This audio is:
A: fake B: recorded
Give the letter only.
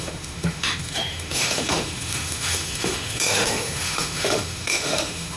A